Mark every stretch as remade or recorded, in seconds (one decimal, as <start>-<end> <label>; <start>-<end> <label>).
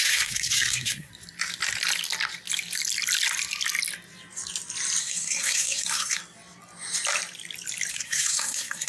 0.0-1.1 remade; 1.1-5.0 recorded; 5.0-6.2 remade; 6.2-7.9 recorded; 7.9-8.9 remade